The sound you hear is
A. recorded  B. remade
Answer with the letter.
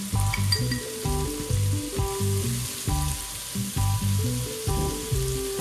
A